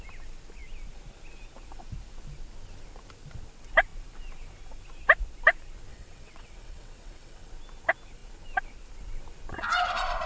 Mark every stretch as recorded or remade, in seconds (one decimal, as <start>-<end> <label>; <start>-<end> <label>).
0.0-5.9 recorded; 5.9-7.5 remade; 7.5-10.3 recorded